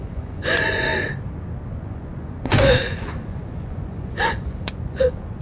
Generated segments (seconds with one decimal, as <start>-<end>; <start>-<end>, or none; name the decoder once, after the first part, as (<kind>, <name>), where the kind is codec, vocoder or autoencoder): 0.0-0.9 (vocoder, Vocos); 1.7-5.4